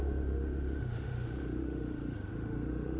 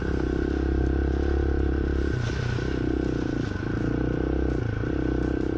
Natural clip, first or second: second